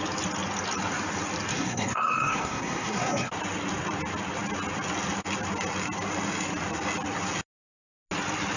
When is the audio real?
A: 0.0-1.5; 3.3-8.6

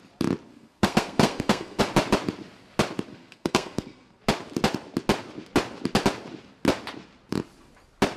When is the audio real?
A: 0.0-0.5; 1.8-3.1; 4.2-8.2